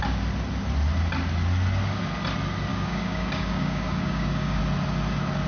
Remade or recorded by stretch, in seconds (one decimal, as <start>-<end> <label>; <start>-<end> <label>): 0.0-2.7 recorded; 2.7-4.6 remade; 4.6-5.5 recorded